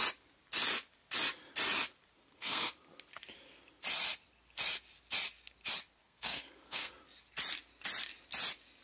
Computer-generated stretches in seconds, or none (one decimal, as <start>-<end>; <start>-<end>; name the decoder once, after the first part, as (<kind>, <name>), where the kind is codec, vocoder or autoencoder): 2.2-2.7 (codec, SNAC); 6.0-6.9